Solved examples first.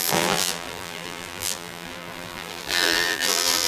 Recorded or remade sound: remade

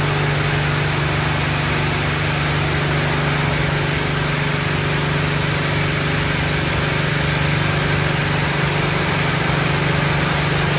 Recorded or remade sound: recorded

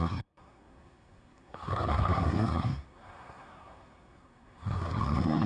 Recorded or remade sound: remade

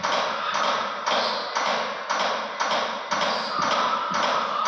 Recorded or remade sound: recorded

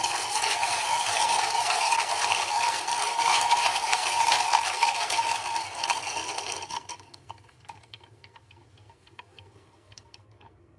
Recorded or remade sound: remade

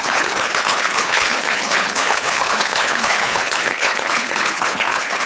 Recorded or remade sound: remade